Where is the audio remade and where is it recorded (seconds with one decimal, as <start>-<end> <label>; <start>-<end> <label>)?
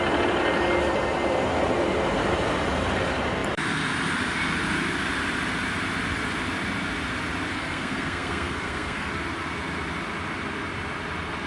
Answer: 0.0-7.5 recorded; 7.5-9.1 remade; 9.1-11.5 recorded